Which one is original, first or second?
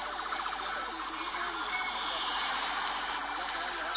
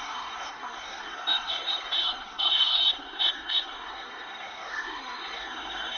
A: first